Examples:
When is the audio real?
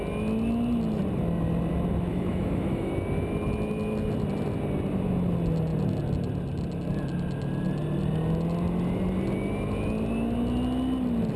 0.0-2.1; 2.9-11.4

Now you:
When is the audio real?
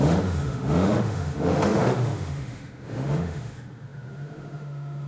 none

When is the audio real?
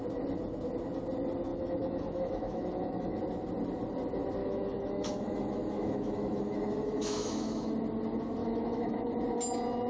0.0-1.5; 3.2-4.4; 7.7-8.4; 9.1-9.9